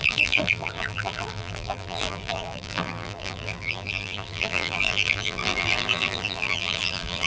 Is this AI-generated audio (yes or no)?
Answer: yes